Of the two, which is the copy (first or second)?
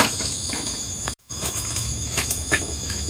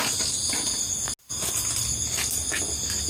first